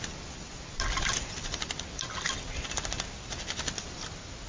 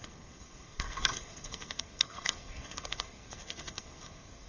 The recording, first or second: first